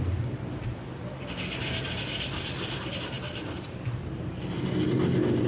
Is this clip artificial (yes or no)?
no